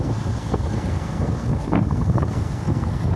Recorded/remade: remade